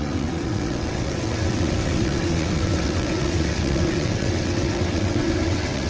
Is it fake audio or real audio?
fake